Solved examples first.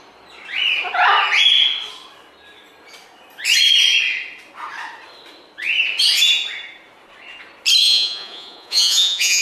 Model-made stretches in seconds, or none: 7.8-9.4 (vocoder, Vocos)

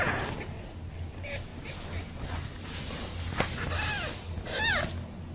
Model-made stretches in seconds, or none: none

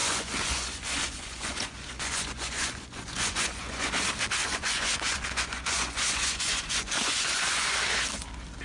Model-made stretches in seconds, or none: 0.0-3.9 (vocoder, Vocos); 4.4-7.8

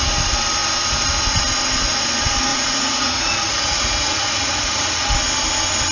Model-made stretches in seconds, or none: 2.5-5.1 (vocoder, Vocos)

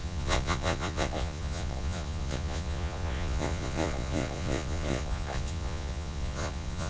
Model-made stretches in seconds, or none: 0.0-6.9 (vocoder, Vocos)

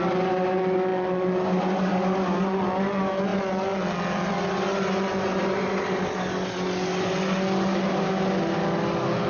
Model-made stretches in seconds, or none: none

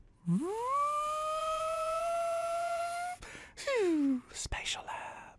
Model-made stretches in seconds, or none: 1.4-2.8 (vocoder, Vocos)

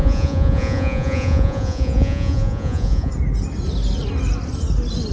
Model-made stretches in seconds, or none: 0.0-3.1 (vocoder, Vocos)